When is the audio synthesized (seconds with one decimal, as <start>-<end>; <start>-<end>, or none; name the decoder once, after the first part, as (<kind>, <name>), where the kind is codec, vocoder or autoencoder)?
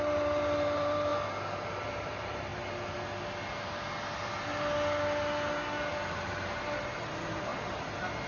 0.0-1.1 (vocoder, BigVGAN v2); 1.7-2.5; 5.9-7.5